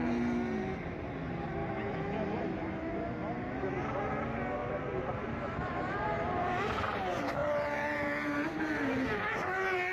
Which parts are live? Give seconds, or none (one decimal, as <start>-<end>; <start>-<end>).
0.0-4.6; 7.0-7.4; 8.7-9.9